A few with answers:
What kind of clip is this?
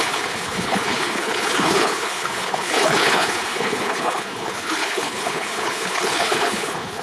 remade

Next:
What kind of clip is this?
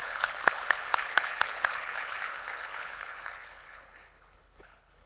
remade